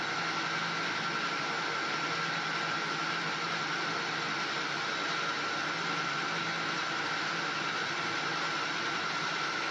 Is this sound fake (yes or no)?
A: no